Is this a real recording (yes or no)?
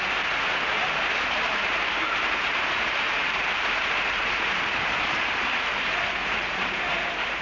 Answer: no